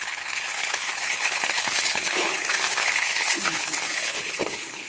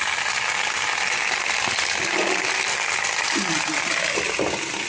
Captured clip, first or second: second